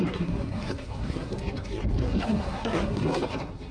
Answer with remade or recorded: remade